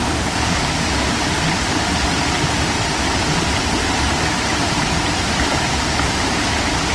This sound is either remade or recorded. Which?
remade